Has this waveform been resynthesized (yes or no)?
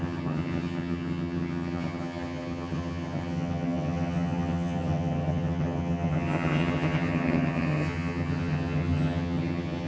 yes